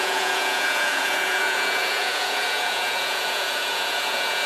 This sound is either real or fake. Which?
fake